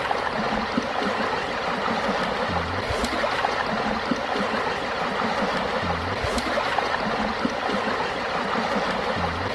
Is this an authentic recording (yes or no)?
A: yes